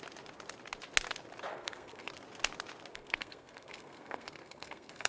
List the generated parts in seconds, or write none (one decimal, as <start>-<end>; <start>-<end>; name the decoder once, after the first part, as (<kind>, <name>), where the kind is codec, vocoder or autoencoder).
1.5-2.1 (codec, SNAC); 2.9-5.1